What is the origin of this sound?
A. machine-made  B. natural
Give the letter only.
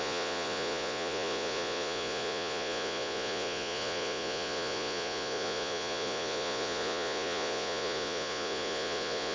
A